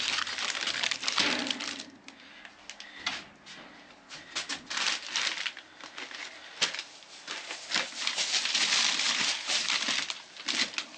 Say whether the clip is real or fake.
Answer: real